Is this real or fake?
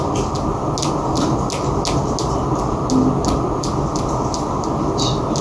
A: real